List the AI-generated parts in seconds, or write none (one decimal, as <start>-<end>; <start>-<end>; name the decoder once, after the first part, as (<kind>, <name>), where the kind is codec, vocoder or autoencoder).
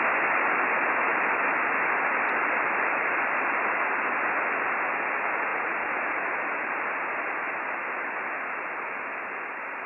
1.1-3.6 (vocoder, BigVGAN v2)